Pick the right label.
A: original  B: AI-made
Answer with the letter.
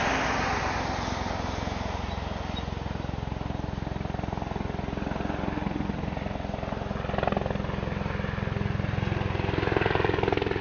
A